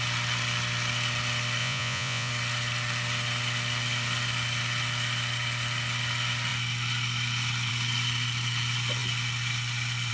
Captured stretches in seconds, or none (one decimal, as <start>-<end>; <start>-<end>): 0.0-1.6; 2.3-10.1